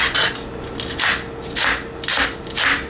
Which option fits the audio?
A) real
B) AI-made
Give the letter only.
A